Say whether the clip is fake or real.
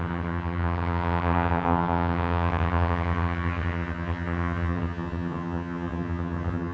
fake